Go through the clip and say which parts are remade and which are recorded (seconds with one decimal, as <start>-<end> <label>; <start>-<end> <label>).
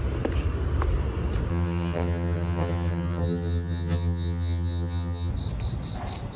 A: 0.0-1.5 recorded; 1.5-5.3 remade; 5.3-6.4 recorded